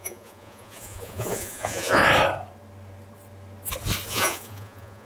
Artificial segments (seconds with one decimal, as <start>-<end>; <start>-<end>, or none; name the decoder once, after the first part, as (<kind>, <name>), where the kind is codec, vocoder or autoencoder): 0.0-2.0 (vocoder, Vocos); 4.1-5.1